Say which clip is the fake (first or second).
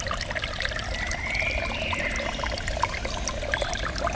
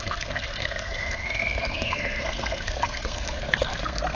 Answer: second